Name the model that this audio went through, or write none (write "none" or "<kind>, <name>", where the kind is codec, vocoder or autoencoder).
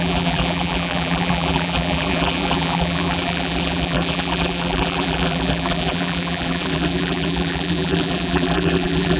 vocoder, BigVGAN v2